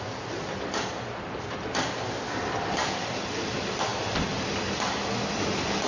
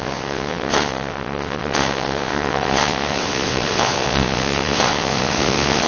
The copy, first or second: second